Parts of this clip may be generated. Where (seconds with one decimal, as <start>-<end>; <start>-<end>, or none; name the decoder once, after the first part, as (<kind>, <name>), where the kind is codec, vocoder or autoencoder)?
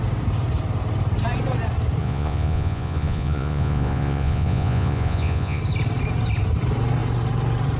2.0-5.6 (vocoder, Vocos)